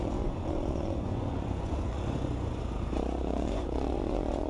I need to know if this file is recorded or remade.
remade